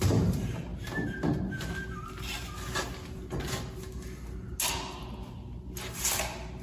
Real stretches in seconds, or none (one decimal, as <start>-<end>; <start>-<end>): 0.0-6.6